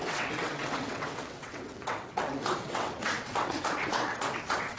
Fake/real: fake